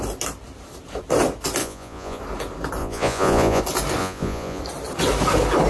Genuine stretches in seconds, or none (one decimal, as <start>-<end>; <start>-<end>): 0.0-1.6; 2.2-2.8; 3.6-4.0; 4.6-5.7